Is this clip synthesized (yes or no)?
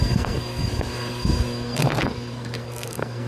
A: yes